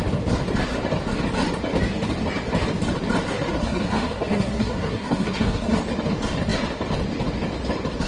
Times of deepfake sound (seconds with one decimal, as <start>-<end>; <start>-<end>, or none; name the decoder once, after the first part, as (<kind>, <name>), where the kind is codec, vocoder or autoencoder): 3.3-5.8 (codec, SNAC)